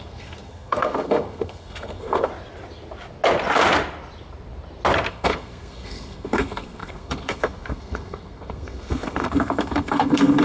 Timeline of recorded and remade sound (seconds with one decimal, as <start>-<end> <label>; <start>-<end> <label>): 0.0-2.3 remade; 2.3-5.1 recorded; 5.1-10.4 remade